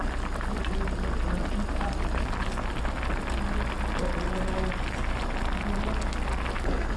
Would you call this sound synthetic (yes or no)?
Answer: no